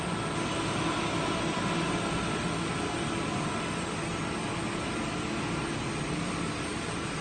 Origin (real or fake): real